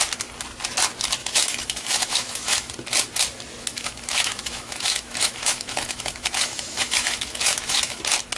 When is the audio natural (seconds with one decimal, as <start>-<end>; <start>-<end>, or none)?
0.0-1.2; 2.7-3.7; 8.0-8.4